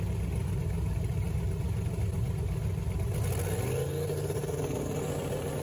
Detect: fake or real real